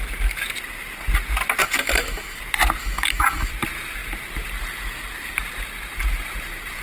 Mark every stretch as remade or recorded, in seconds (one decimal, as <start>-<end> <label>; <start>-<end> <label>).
0.0-1.6 recorded; 1.6-2.4 remade; 2.4-2.8 recorded; 2.8-3.5 remade; 3.5-6.8 recorded